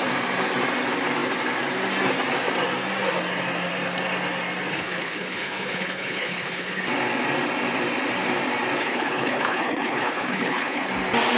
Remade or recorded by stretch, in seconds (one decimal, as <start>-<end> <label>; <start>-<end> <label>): 0.0-4.7 recorded; 4.7-6.8 remade; 6.8-8.8 recorded; 8.8-10.9 remade; 10.9-11.4 recorded